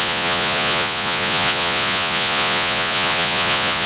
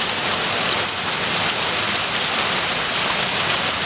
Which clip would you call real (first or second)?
second